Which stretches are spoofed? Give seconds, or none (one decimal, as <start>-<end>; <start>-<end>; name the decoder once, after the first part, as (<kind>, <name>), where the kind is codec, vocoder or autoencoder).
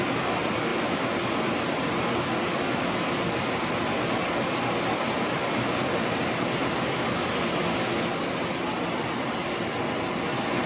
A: none